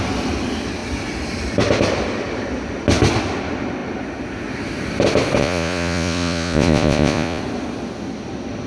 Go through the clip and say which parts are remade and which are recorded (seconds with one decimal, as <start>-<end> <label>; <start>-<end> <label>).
0.0-5.4 recorded; 5.4-7.4 remade; 7.4-8.7 recorded